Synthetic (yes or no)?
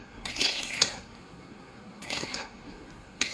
yes